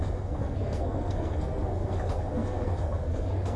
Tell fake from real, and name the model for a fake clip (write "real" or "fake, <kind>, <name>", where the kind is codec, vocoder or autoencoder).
fake, codec, SNAC